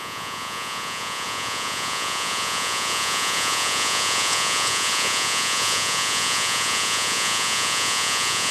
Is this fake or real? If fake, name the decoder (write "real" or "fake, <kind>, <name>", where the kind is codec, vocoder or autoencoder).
fake, vocoder, Vocos